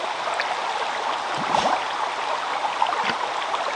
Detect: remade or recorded recorded